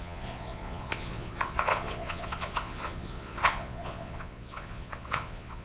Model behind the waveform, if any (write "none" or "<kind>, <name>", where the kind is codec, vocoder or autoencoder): vocoder, Vocos